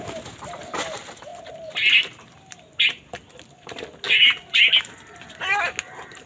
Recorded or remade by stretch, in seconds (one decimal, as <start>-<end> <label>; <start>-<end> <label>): 0.0-6.3 recorded